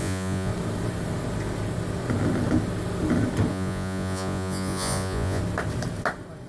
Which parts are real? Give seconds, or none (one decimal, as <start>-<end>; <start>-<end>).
0.5-3.5; 5.4-6.5